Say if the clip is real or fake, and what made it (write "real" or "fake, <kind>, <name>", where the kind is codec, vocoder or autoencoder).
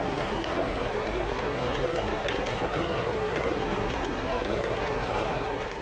fake, codec, SNAC